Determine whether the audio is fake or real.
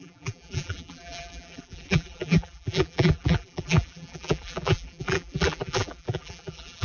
fake